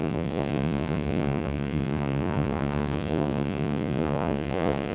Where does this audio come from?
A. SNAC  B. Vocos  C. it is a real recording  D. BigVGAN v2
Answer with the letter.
B